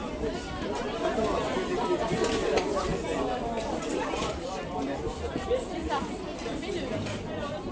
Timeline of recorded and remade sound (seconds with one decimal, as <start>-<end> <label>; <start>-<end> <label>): 0.0-2.9 recorded; 2.9-6.1 remade; 6.1-7.7 recorded